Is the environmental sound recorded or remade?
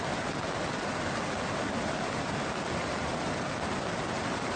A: recorded